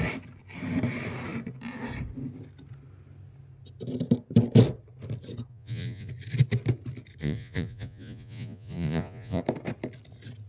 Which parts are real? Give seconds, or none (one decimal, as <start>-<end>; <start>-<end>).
0.0-5.5; 6.1-7.2; 9.4-10.5